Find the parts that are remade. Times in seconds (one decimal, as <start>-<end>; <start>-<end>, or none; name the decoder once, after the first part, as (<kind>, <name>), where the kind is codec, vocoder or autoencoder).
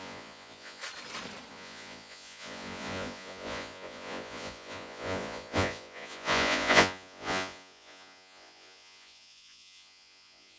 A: 0.0-0.8 (vocoder, Vocos); 1.5-10.6